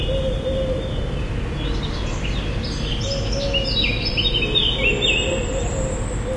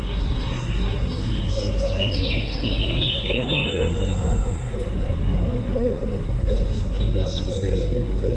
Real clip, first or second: first